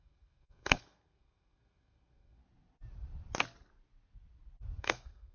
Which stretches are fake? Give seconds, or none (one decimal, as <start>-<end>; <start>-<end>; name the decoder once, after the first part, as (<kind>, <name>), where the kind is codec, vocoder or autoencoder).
0.0-2.4 (codec, SNAC); 4.8-5.3